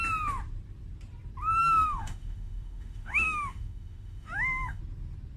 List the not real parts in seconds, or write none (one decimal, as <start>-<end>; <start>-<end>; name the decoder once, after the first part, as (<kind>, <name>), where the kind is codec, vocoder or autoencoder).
1.6-4.8 (autoencoder, DAC-VAE)